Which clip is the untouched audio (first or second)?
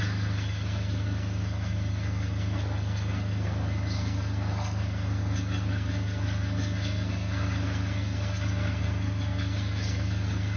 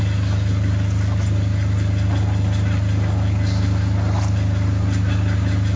second